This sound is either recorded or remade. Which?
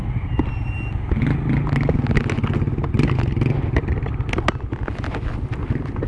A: recorded